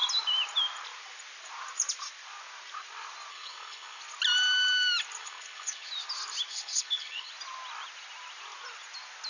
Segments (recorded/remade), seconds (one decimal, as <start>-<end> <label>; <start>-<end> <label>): 0.0-3.3 recorded; 3.3-4.0 remade; 4.0-5.2 recorded; 5.2-5.9 remade; 5.9-6.5 recorded; 6.5-7.3 remade; 7.3-9.3 recorded